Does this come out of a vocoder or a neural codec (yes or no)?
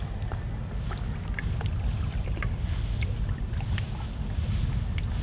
no